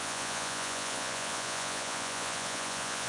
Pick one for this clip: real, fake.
fake